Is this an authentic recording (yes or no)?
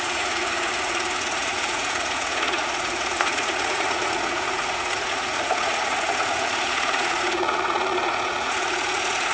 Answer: no